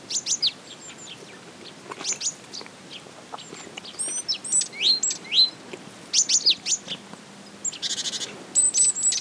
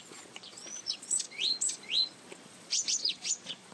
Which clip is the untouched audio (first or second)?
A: first